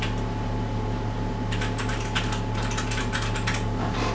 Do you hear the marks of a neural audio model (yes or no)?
no